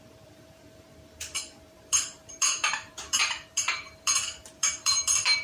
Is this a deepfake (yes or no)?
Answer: yes